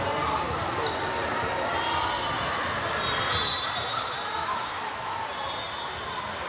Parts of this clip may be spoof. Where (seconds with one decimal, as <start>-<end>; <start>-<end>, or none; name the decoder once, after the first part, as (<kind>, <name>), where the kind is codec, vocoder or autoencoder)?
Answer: 4.4-5.1 (autoencoder, DAC-VAE)